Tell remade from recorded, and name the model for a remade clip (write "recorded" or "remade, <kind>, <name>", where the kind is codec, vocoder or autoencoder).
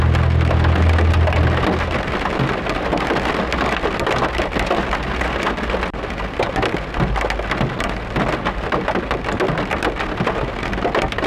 recorded